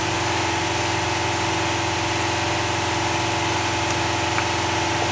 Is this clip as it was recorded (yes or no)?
yes